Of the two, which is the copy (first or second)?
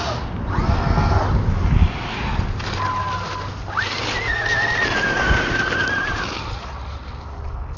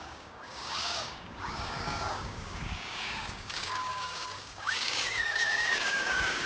second